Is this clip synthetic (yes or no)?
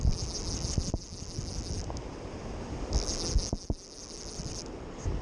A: no